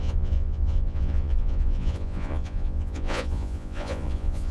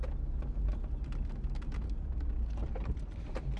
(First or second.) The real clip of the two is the second